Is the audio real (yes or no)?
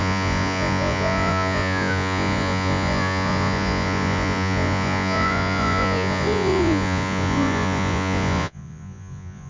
no